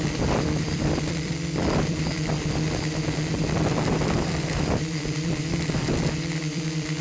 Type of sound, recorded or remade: remade